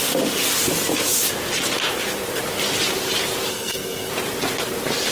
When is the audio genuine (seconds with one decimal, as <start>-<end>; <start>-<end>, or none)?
0.0-3.5; 4.1-5.1